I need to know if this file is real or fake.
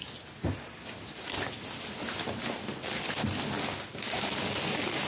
real